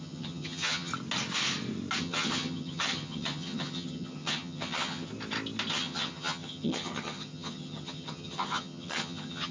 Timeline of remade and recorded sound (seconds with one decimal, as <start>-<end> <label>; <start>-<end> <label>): 0.0-0.9 remade; 0.9-2.0 recorded; 2.0-5.1 remade; 5.1-5.7 recorded; 5.7-9.5 remade